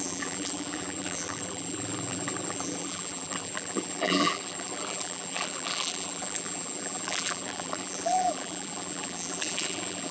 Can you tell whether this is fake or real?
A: fake